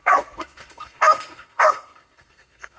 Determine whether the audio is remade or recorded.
remade